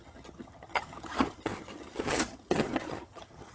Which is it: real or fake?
fake